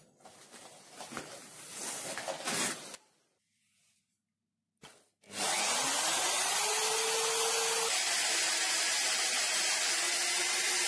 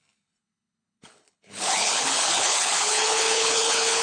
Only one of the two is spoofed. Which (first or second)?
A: second